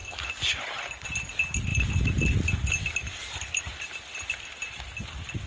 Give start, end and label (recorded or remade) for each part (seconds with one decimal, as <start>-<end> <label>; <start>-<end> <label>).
0.0-0.7 remade; 0.7-1.7 recorded; 1.7-4.4 remade; 4.4-5.5 recorded